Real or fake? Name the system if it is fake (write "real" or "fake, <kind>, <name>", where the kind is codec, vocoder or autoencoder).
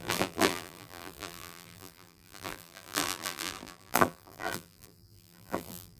fake, vocoder, BigVGAN v2